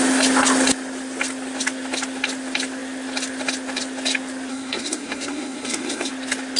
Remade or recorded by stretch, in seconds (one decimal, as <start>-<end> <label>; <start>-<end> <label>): 0.0-4.5 recorded; 4.5-6.1 remade; 6.1-6.6 recorded